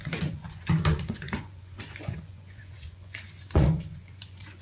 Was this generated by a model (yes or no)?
yes